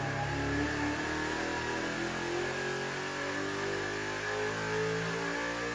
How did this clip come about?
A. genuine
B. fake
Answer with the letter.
A